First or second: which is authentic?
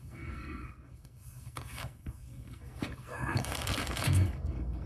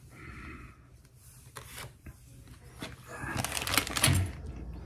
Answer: second